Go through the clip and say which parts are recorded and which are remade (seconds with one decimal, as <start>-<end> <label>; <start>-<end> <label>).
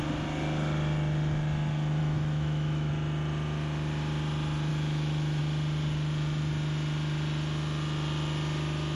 0.0-2.0 recorded; 2.0-2.9 remade; 2.9-4.7 recorded; 4.7-5.4 remade; 5.4-9.0 recorded